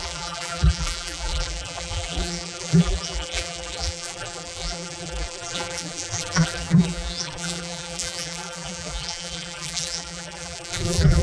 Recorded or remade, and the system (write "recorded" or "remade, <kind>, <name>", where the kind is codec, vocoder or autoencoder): remade, vocoder, BigVGAN v2